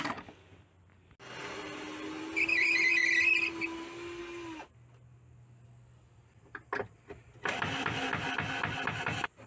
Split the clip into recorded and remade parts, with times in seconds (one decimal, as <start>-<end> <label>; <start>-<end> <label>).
0.0-9.5 recorded